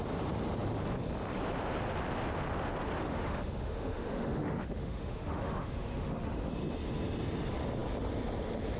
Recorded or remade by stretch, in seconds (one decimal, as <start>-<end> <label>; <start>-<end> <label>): 0.0-3.0 recorded; 3.0-6.5 remade; 6.5-8.8 recorded